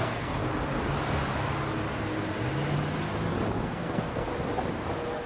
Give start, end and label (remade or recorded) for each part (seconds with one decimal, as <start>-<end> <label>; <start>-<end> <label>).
0.0-0.4 remade; 0.4-3.6 recorded; 3.6-4.3 remade; 4.3-5.3 recorded